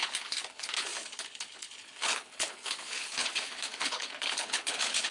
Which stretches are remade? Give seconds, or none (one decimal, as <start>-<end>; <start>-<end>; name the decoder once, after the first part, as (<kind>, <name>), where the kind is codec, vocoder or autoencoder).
0.0-5.1 (codec, HILCodec)